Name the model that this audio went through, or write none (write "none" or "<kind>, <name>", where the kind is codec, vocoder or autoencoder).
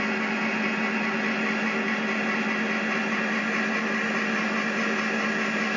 none